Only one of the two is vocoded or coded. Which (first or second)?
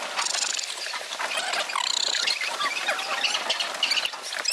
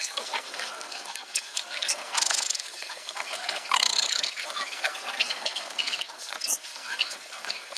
second